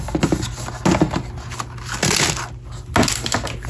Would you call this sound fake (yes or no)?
no